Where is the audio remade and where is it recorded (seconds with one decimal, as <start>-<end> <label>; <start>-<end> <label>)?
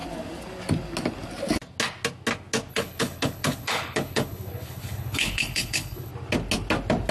0.0-2.7 recorded; 2.7-6.1 remade; 6.1-7.1 recorded